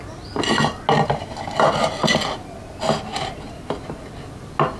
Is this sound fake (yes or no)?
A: no